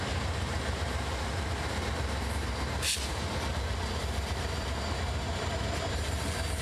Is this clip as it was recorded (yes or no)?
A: no